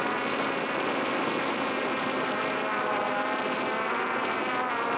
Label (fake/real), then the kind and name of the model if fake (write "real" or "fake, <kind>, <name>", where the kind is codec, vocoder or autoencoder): real